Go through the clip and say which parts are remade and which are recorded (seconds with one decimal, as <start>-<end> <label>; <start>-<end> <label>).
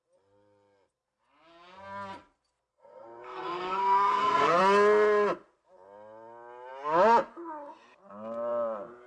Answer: 0.0-2.7 recorded; 2.7-4.6 remade; 4.6-9.1 recorded